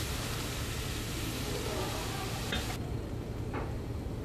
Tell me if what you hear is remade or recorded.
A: recorded